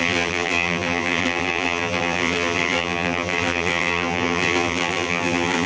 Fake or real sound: fake